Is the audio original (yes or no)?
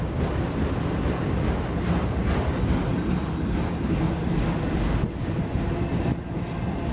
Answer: yes